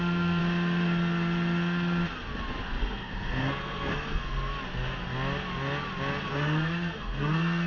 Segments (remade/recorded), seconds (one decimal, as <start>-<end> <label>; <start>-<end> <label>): 0.0-0.4 remade; 0.4-2.8 recorded; 2.8-4.5 remade; 4.5-6.3 recorded; 6.3-7.7 remade